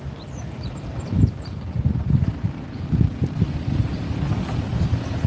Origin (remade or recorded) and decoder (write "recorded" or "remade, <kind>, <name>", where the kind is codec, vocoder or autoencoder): recorded